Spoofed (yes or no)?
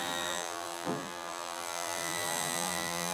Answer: yes